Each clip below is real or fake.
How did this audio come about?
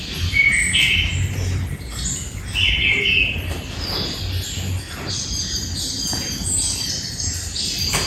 real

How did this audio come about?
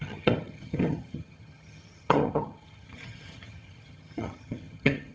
fake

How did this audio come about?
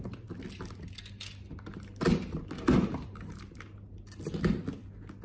real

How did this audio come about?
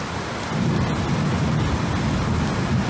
real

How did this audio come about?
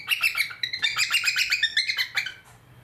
fake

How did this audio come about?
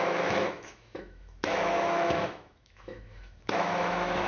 fake